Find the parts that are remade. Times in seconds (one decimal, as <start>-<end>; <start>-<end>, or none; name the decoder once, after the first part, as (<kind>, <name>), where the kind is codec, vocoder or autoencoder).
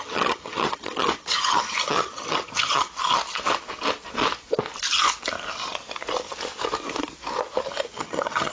0.0-2.9 (vocoder, HiFi-GAN); 8.0-8.5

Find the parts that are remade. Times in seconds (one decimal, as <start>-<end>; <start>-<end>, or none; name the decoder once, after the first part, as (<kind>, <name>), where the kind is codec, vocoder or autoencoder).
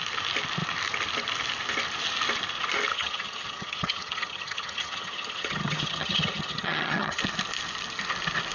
2.9-7.2 (vocoder, HiFi-GAN)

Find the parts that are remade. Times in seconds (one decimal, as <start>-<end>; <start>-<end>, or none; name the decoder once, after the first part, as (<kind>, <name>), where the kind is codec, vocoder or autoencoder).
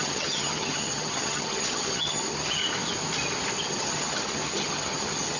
0.0-2.6 (vocoder, HiFi-GAN); 3.6-5.4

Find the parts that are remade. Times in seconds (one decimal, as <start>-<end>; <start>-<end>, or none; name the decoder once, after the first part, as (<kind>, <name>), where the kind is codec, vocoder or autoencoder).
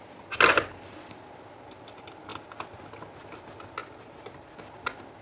none